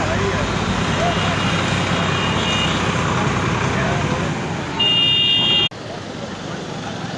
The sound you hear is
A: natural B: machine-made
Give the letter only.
A